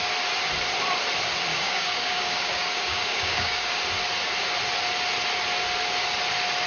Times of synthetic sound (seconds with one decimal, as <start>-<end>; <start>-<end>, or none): 1.5-3.8